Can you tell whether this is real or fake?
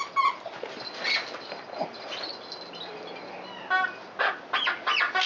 real